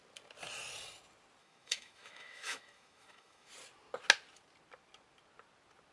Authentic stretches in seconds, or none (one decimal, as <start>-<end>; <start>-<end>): 0.0-1.4; 3.5-5.9